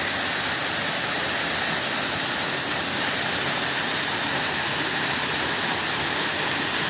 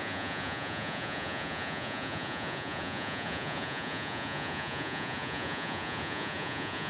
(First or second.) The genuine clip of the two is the first